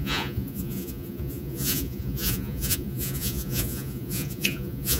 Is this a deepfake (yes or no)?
yes